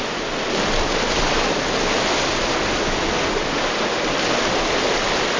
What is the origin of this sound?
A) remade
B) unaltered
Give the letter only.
B